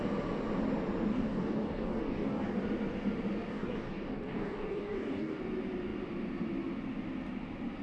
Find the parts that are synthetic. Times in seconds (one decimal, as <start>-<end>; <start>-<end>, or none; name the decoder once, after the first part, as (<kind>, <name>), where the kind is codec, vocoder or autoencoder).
1.1-2.6 (codec, DAC); 3.5-5.4